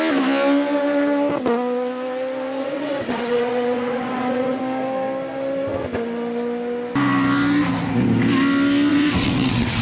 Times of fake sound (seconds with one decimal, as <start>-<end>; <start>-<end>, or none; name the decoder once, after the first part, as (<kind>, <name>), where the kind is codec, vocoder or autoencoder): 2.6-4.6 (vocoder, WaveNeXt); 8.9-9.8